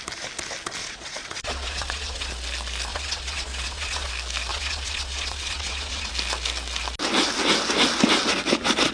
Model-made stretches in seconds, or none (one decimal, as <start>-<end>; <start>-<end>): 0.8-2.3; 2.9-4.1; 4.5-6.1